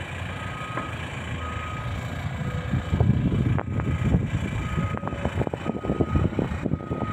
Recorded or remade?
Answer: recorded